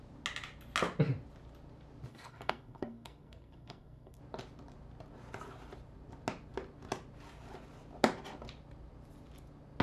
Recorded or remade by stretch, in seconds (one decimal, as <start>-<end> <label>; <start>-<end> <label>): 0.0-2.1 recorded; 2.1-4.2 remade; 4.2-9.8 recorded